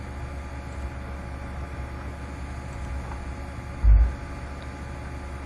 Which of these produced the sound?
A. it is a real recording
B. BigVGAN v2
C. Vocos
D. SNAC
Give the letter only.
A